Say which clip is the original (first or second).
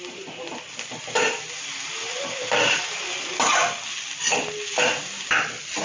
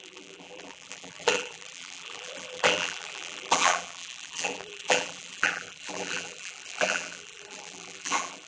first